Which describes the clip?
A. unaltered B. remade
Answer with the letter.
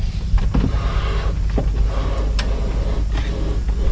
A